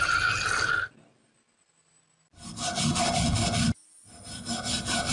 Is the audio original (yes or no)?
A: yes